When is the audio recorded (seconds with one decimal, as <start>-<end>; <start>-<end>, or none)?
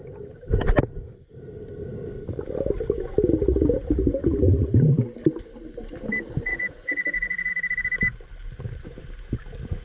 0.0-6.5; 7.5-9.8